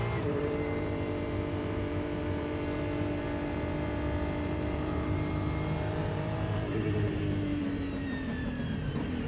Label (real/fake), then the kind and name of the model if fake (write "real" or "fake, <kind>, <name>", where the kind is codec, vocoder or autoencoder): fake, vocoder, BigVGAN v2